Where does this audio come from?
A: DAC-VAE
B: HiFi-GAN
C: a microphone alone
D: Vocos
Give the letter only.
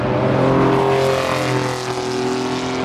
C